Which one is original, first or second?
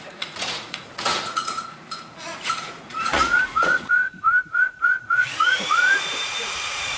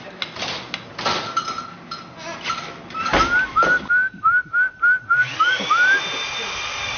second